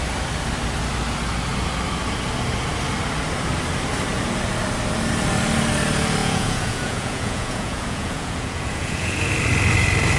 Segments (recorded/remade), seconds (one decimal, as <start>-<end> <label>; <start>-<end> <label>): 0.0-6.2 recorded; 6.2-9.3 remade; 9.3-10.2 recorded